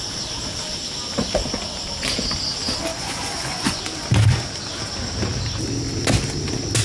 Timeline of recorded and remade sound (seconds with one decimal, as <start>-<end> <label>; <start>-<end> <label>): 0.0-2.9 recorded; 2.9-3.8 remade; 3.8-6.8 recorded